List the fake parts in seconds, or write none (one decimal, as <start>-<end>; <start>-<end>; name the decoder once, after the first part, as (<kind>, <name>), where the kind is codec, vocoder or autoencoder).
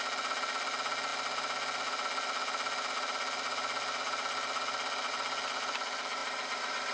6.2-6.9 (vocoder, BigVGAN v2)